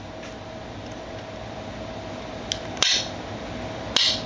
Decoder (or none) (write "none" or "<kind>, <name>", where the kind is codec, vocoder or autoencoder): none